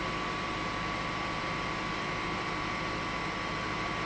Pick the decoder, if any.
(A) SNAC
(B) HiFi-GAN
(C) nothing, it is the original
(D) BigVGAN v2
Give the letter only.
D